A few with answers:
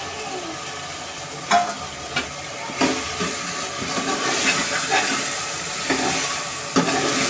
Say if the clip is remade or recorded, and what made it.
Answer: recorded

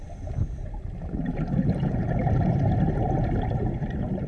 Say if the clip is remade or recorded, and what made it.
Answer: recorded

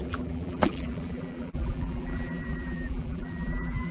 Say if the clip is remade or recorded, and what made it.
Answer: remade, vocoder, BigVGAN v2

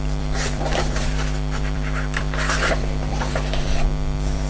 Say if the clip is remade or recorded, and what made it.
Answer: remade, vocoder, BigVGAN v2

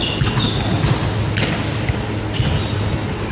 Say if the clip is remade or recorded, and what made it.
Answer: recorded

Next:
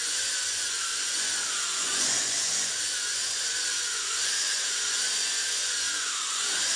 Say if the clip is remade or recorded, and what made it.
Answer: remade, vocoder, Vocos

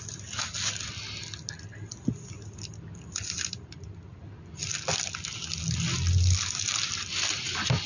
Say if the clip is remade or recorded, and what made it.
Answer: recorded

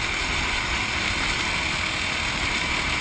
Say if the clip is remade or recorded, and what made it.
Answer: remade, vocoder, BigVGAN v2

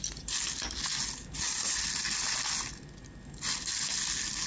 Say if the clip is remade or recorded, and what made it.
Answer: recorded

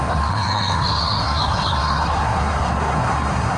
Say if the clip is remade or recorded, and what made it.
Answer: remade, codec, SNAC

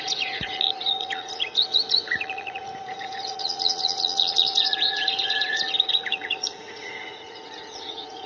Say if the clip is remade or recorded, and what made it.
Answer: remade, vocoder, Vocos